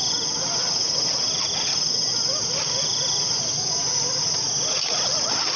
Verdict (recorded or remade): recorded